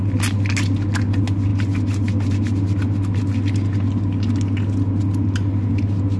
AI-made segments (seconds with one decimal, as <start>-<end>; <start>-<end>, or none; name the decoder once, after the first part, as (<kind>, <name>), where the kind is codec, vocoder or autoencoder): none